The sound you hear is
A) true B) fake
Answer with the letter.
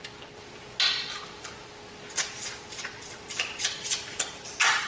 A